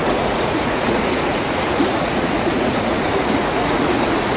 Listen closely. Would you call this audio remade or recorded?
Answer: remade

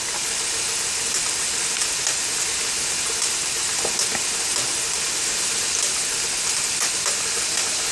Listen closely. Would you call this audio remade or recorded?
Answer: recorded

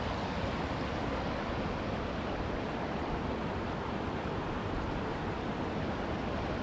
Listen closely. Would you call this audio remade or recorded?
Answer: recorded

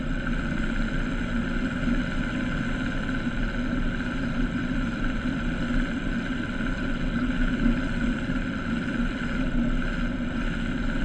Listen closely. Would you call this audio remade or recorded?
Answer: remade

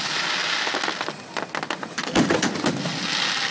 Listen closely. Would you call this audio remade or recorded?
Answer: recorded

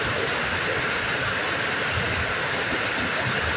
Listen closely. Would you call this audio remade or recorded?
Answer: remade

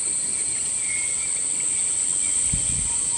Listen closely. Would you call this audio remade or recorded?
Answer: recorded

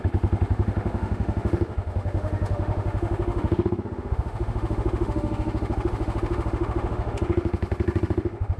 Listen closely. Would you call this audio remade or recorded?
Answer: remade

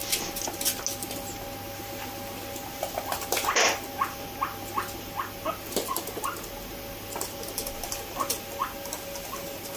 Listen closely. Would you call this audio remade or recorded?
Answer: recorded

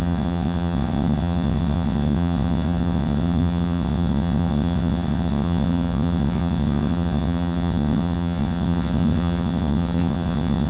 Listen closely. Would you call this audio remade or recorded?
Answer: remade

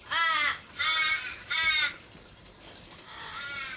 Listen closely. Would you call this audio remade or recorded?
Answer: remade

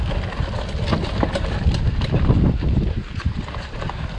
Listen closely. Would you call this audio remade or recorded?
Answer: recorded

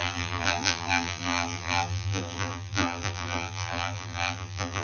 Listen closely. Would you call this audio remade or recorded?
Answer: remade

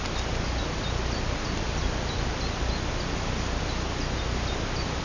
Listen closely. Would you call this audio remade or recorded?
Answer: recorded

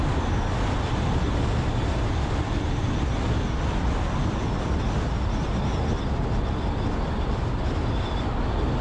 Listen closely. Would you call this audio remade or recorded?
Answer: recorded